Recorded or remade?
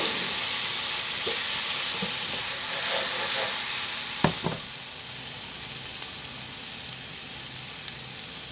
recorded